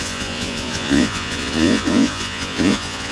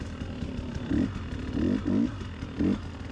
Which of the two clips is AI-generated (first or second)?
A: first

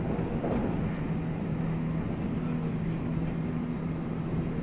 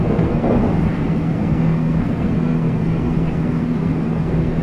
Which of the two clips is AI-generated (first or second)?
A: second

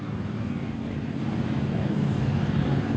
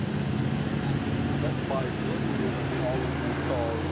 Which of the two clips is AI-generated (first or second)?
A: first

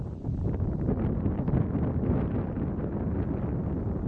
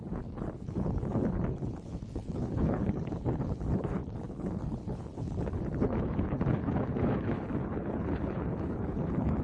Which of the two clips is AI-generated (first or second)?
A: second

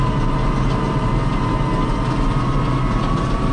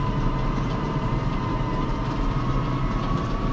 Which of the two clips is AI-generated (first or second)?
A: second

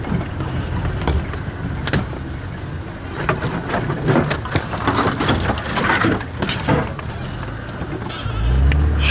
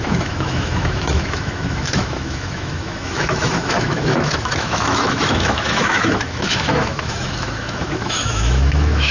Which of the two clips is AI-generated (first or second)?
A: second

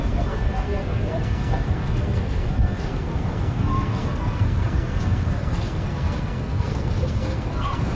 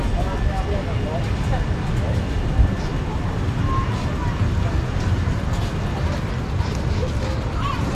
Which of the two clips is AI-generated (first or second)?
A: first